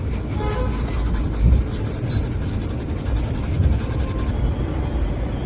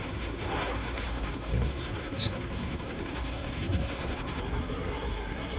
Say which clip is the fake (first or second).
second